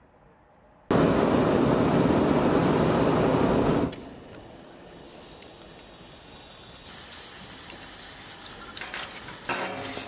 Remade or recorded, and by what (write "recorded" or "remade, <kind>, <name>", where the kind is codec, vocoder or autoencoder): recorded